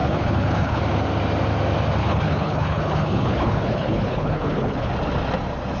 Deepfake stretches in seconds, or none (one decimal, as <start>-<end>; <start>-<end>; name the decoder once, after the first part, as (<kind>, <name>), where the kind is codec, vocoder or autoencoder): 0.0-0.8 (codec, HILCodec); 2.0-4.9